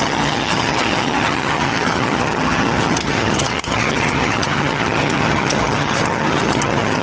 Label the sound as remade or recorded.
remade